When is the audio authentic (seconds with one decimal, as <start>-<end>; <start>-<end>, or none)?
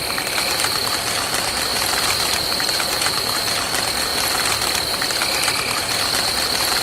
0.0-1.7; 3.4-6.8